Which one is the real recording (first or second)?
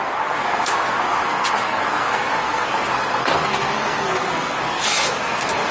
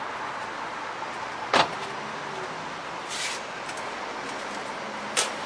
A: second